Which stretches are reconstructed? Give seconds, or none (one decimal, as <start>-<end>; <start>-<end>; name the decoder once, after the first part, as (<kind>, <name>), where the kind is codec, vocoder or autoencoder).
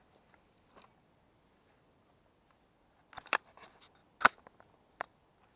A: none